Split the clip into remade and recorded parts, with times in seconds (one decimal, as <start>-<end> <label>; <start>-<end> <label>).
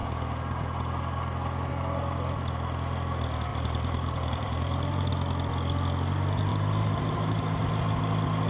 0.0-3.5 recorded; 3.5-5.1 remade; 5.1-6.5 recorded; 6.5-7.6 remade; 7.6-8.5 recorded